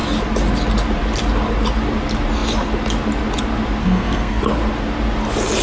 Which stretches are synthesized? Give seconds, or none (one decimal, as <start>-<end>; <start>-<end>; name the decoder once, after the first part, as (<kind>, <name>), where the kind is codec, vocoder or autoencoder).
3.8-4.4 (codec, SNAC)